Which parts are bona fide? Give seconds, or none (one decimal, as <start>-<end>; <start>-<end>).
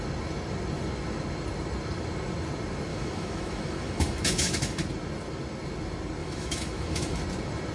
0.0-2.9; 4.8-6.2; 7.2-7.7